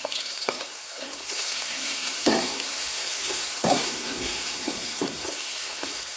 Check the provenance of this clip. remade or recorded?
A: remade